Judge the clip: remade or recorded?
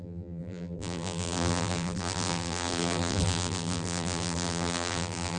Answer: remade